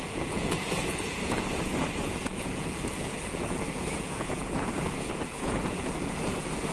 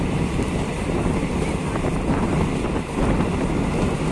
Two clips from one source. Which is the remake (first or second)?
first